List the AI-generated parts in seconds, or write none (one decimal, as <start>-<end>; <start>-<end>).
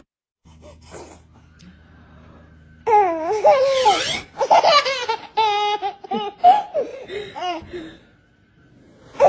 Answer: 6.9-7.8